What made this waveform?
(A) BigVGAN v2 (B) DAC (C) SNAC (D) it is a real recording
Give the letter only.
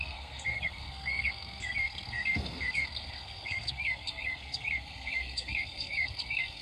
C